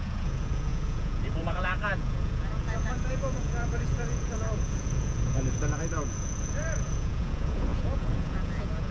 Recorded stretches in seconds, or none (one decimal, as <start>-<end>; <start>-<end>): none